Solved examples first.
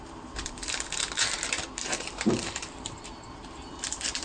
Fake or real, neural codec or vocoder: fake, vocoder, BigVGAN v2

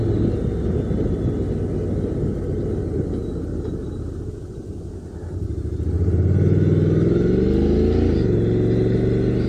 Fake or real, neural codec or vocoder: real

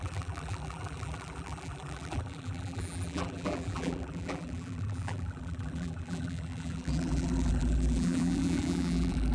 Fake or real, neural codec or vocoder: fake, vocoder, BigVGAN v2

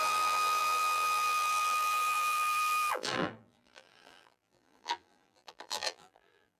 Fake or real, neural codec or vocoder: fake, vocoder, BigVGAN v2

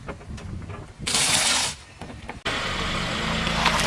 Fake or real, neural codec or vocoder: real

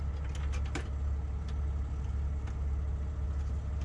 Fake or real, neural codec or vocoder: real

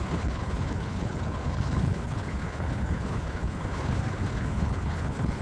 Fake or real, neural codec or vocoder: fake, codec, HILCodec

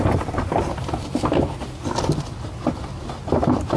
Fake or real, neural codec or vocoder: real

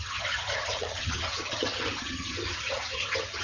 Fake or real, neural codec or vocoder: fake, vocoder, HiFi-GAN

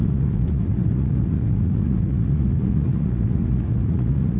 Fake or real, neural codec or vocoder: fake, vocoder, Vocos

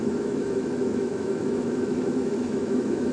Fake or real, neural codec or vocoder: fake, autoencoder, DAC-VAE